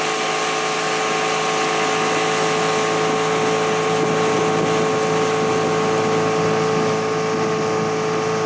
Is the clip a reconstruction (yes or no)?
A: no